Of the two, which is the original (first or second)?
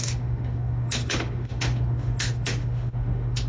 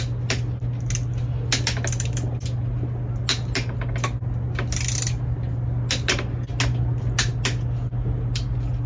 second